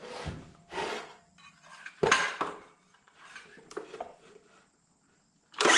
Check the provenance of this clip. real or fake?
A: real